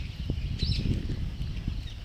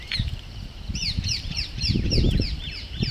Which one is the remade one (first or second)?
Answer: second